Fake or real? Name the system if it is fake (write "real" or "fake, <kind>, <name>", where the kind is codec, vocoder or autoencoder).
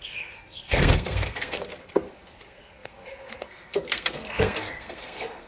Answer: fake, codec, SNAC